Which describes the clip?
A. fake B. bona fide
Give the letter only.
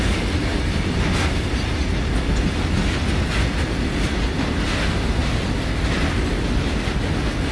B